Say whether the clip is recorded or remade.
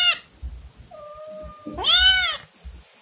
recorded